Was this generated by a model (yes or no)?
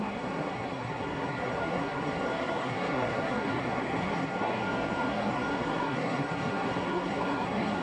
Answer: yes